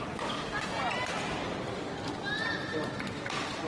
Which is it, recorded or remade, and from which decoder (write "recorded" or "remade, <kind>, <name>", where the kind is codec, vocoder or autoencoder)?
recorded